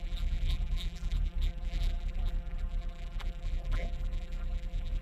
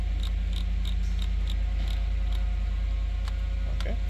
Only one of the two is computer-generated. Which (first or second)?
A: first